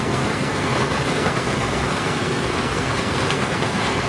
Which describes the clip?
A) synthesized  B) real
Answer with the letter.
A